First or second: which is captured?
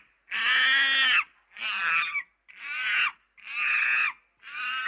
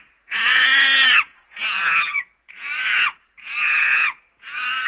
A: first